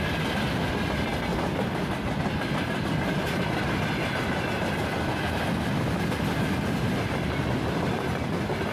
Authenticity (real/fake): real